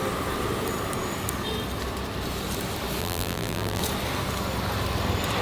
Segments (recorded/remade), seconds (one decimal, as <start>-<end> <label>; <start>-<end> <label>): 0.0-3.0 recorded; 3.0-3.8 remade; 3.8-5.4 recorded